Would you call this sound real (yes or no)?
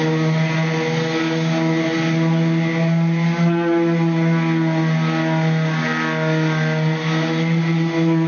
yes